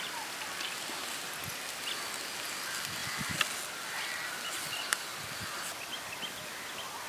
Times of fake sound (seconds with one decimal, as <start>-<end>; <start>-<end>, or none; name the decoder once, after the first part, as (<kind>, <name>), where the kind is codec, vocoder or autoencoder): none